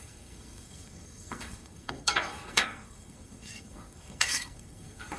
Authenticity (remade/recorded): remade